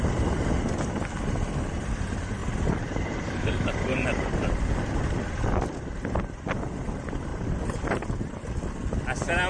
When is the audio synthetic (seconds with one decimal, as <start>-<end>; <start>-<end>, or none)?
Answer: 2.4-4.5; 7.3-8.0